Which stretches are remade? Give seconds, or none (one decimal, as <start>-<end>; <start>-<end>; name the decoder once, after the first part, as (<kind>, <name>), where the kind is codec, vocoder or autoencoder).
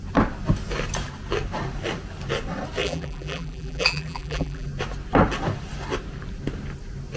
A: 2.8-4.7 (vocoder, BigVGAN v2)